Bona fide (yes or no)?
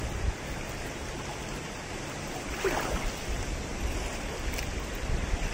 yes